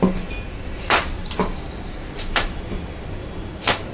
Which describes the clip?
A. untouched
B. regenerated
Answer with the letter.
B